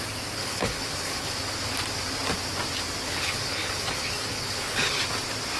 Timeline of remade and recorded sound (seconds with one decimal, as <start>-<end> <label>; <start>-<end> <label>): 0.0-0.4 recorded; 0.4-1.3 remade; 1.3-3.0 recorded; 3.0-5.0 remade; 5.0-5.6 recorded